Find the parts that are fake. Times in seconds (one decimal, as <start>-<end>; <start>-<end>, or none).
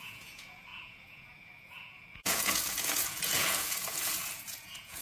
0.0-5.0